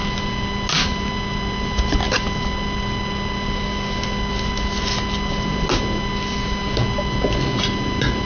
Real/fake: real